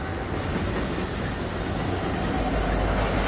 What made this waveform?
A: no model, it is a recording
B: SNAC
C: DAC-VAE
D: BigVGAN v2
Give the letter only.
A